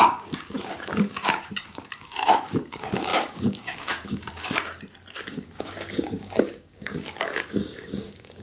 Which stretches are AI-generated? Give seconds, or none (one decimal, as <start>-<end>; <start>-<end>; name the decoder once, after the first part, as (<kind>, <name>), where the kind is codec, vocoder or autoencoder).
0.0-4.6 (codec, DAC); 5.2-8.4